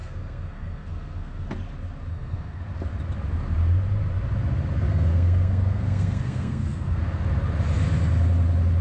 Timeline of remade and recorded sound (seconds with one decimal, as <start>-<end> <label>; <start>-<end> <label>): 0.0-1.5 remade; 1.5-2.1 recorded; 2.1-2.6 remade; 2.6-4.9 recorded; 4.9-7.0 remade; 7.0-8.8 recorded